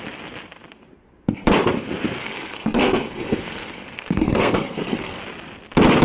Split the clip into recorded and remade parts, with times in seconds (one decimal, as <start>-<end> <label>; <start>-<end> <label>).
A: 0.0-2.2 recorded; 2.2-5.2 remade; 5.2-6.0 recorded